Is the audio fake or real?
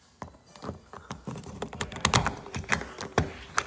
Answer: real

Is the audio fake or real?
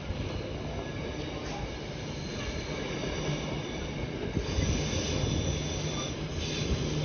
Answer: real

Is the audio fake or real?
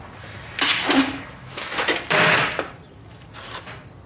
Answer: real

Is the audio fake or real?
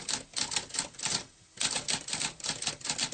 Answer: real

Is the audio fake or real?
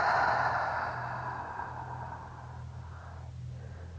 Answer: real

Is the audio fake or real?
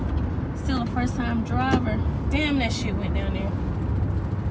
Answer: real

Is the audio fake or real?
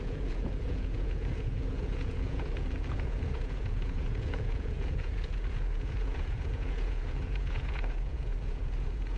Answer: fake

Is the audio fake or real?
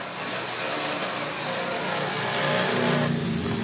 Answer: real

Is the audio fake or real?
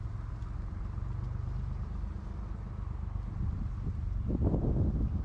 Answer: real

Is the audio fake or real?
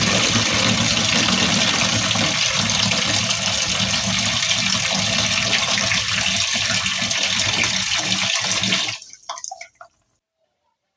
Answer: real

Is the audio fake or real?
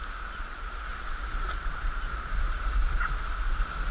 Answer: real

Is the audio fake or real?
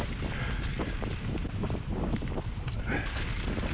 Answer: real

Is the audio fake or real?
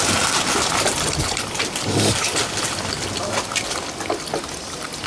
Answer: real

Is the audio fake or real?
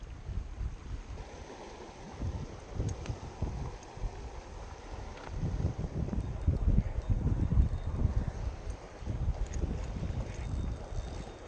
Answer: real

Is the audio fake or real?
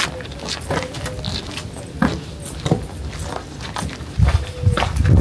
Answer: real